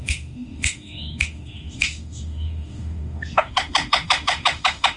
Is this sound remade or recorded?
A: remade